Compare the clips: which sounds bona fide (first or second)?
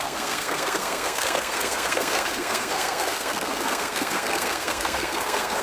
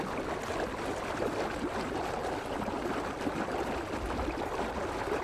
second